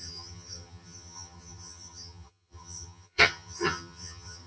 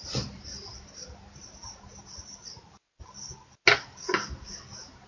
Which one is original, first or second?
second